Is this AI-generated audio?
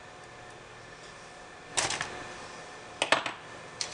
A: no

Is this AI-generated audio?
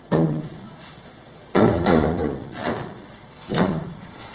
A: yes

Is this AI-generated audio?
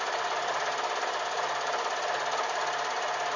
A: no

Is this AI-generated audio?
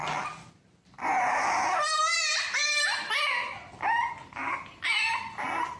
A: no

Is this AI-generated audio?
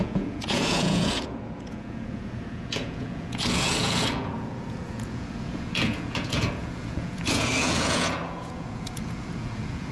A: yes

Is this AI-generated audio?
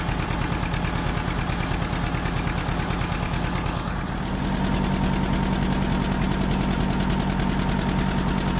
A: no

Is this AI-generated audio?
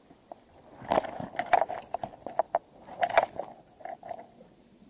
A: no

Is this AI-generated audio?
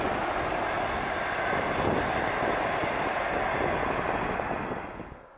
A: no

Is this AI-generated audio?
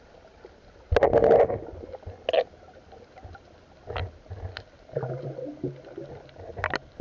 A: no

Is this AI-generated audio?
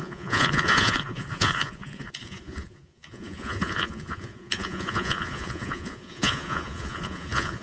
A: yes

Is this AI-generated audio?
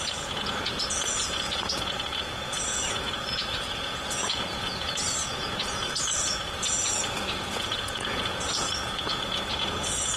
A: yes